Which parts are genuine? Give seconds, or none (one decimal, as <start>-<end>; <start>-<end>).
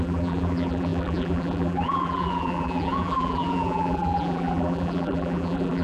none